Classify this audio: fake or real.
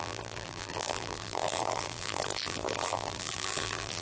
fake